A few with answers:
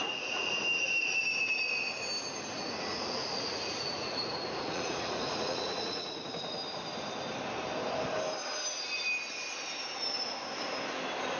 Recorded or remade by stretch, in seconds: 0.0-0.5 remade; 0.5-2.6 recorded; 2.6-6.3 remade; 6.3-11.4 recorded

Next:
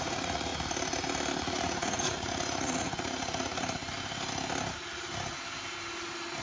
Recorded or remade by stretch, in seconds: 0.0-0.5 remade; 0.5-1.4 recorded; 1.4-3.8 remade; 3.8-6.4 recorded

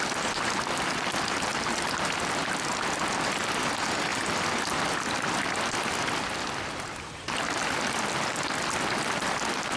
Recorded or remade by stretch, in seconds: 0.0-9.8 recorded

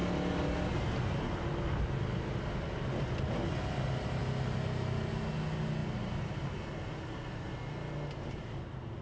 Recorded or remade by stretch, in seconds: 0.0-9.0 recorded

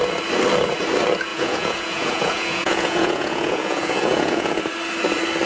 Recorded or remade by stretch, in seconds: 0.0-1.3 recorded; 1.3-4.6 remade; 4.6-5.5 recorded

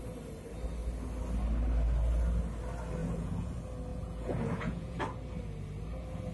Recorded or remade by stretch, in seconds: 0.0-3.0 recorded; 3.0-3.5 remade; 3.5-3.9 recorded; 3.9-5.0 remade; 5.0-6.3 recorded

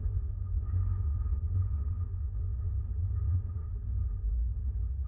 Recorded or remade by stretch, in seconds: 0.0-2.5 remade; 2.5-5.1 recorded

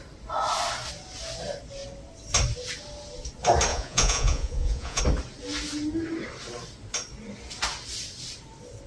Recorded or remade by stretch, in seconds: 0.0-3.7 recorded; 3.7-5.0 remade; 5.0-8.9 recorded